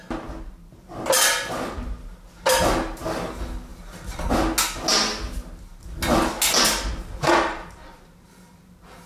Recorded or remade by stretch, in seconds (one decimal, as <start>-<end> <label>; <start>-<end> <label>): 0.0-9.1 recorded